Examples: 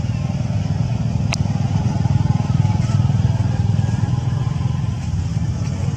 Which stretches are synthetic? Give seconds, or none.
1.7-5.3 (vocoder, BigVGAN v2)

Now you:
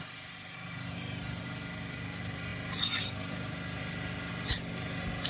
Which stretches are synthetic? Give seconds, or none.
none

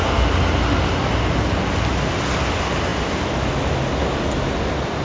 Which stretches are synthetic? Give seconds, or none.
none

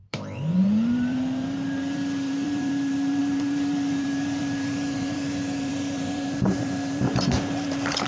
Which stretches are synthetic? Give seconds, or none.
0.0-8.1 (vocoder, BigVGAN v2)

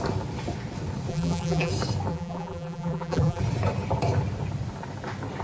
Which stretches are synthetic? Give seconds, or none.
1.1-1.7 (vocoder, BigVGAN v2); 2.1-3.4

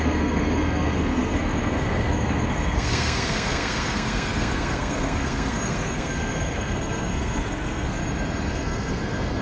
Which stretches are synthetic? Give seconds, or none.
0.0-8.0 (codec, SNAC); 8.5-9.4